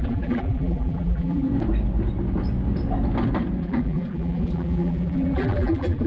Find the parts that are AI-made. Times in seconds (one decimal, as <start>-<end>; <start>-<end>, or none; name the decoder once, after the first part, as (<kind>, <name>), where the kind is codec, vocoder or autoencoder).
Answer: 0.0-1.5 (vocoder, BigVGAN v2); 3.6-6.1